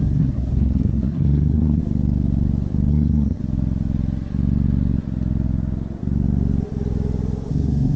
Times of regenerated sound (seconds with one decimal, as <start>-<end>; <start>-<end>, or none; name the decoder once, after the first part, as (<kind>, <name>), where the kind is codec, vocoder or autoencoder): 0.0-1.8 (codec, SNAC); 2.9-3.4; 7.5-8.0